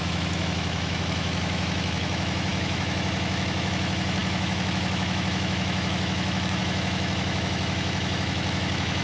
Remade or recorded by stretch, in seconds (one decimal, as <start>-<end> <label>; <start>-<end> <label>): 0.0-9.0 remade